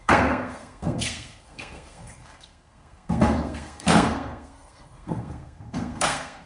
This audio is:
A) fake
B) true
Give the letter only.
A